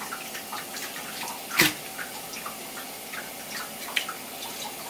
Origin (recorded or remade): recorded